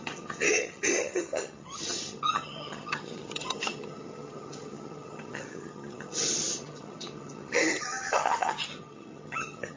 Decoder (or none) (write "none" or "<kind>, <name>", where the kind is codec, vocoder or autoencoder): vocoder, HiFi-GAN